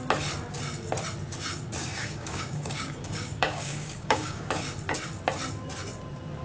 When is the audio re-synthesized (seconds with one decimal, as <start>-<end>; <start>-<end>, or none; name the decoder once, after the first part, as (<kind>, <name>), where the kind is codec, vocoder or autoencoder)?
1.8-4.5 (codec, DAC)